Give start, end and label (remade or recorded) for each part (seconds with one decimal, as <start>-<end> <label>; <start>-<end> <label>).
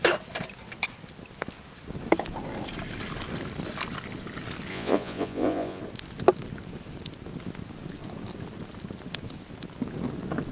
0.0-4.7 recorded; 4.7-5.8 remade; 5.8-10.5 recorded